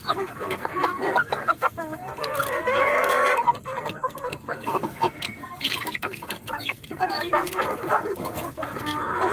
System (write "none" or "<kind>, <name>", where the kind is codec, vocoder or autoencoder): codec, SNAC